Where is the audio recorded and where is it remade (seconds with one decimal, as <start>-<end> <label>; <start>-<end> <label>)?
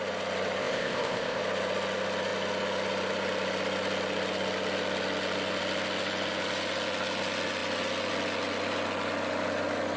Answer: 0.0-0.6 recorded; 0.6-1.4 remade; 1.4-10.0 recorded